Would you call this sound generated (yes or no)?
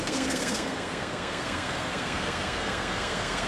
yes